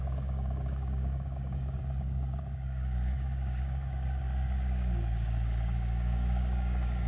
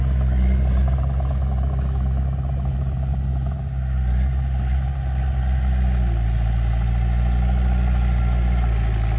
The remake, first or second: first